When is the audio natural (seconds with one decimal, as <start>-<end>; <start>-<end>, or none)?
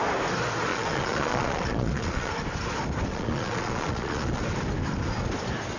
0.0-0.7; 2.3-3.1; 4.4-5.8